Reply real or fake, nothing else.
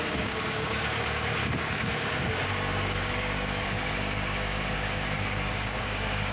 fake